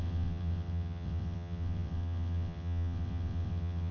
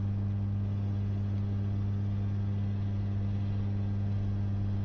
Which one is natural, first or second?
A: second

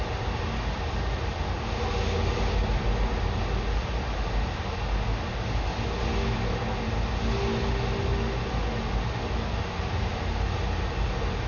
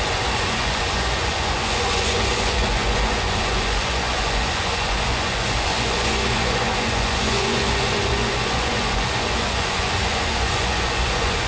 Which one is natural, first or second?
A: first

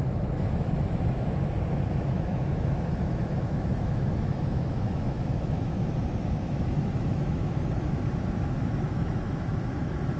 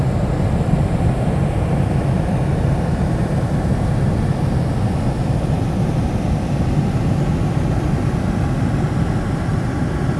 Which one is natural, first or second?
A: second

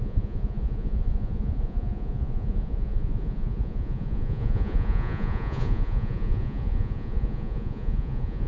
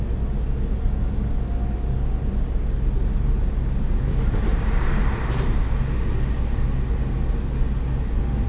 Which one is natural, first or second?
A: second